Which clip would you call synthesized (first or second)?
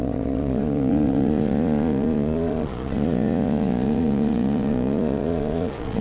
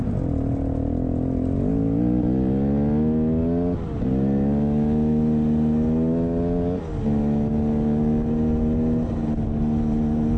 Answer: first